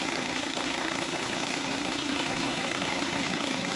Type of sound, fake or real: fake